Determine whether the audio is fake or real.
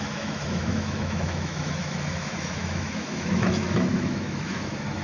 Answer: fake